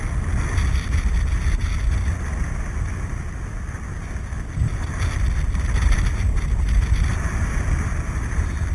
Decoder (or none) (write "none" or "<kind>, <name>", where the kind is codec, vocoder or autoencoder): none